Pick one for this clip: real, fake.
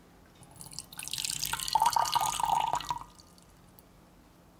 real